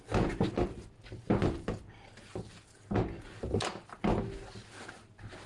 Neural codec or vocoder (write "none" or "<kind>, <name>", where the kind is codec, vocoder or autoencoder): none